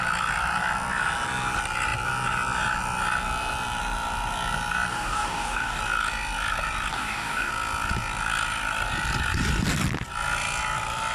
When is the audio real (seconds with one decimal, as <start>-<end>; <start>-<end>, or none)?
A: 0.0-4.9; 5.8-6.9; 7.5-11.1